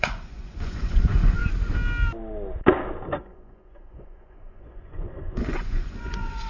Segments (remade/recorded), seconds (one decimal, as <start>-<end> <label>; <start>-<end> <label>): 0.0-1.4 remade; 1.4-3.2 recorded; 3.2-6.5 remade